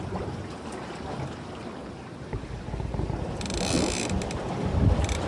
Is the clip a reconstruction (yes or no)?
no